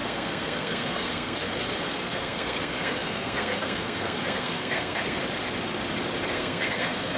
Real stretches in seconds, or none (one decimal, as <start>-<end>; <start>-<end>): 5.2-6.3